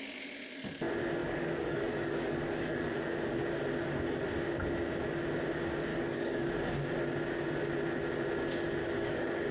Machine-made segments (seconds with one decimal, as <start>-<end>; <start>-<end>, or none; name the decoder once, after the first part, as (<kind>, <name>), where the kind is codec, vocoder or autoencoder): 1.2-3.0 (codec, DAC); 5.9-6.5; 8.8-9.5